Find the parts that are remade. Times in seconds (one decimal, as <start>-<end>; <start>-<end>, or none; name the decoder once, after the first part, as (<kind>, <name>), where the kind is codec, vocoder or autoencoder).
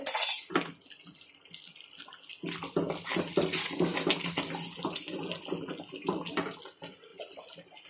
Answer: none